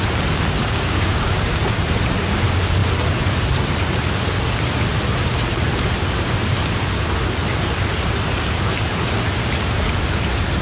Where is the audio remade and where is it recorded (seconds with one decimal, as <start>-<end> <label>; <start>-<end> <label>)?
0.0-0.6 recorded; 0.6-1.6 remade; 1.6-10.6 recorded